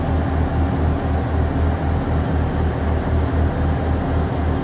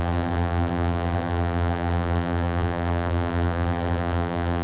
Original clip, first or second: first